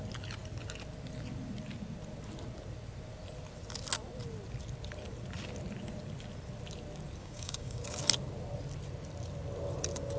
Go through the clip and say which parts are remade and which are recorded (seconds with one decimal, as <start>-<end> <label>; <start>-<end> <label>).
0.0-7.2 recorded; 7.2-7.8 remade; 7.8-10.2 recorded